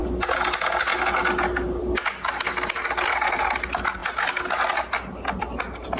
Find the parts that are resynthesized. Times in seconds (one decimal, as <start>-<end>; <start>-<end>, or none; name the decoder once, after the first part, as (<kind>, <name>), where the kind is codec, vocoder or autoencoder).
none